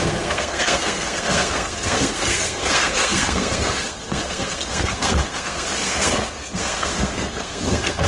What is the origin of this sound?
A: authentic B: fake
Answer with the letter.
B